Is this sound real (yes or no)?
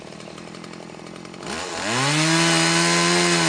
yes